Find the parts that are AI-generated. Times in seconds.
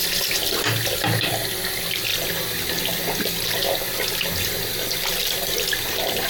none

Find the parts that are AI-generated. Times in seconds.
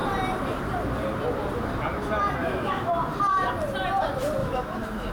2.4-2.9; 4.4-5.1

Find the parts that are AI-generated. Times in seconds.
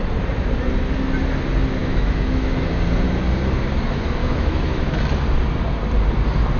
1.8-2.5; 4.2-5.0